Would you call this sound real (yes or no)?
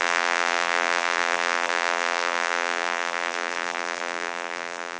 no